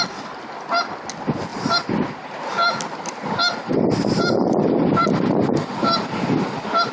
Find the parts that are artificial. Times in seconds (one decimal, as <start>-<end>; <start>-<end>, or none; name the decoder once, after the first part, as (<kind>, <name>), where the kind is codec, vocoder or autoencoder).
none